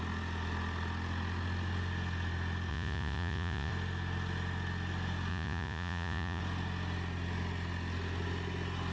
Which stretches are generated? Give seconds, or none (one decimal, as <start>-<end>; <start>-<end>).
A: 2.7-3.7; 5.3-6.4